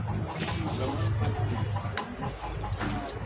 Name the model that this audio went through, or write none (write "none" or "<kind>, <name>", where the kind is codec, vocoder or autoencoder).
none